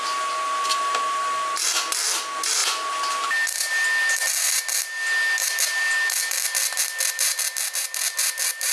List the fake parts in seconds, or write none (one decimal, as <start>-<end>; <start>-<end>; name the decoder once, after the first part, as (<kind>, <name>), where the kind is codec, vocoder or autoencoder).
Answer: none